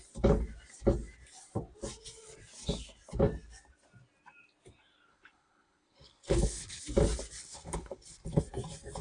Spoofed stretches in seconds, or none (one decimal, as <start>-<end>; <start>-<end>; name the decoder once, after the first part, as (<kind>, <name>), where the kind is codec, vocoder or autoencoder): 5.1-6.8 (codec, HILCodec); 7.4-8.4